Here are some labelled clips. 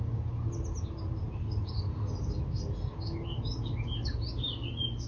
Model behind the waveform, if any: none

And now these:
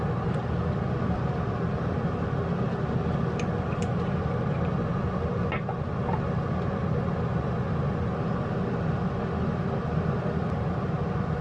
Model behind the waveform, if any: none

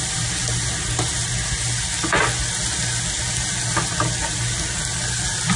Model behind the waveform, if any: none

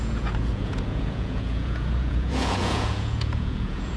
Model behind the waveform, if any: vocoder, Vocos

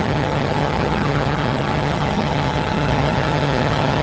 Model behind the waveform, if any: vocoder, HiFi-GAN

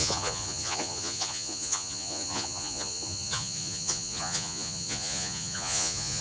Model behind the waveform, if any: vocoder, Vocos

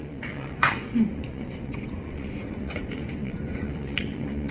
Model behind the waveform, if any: vocoder, Vocos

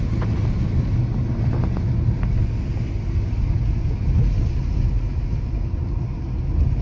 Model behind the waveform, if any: none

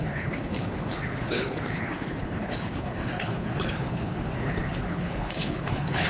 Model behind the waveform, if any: codec, HILCodec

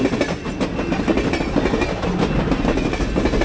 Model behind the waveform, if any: none